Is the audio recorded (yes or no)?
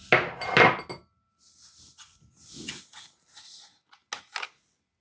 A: yes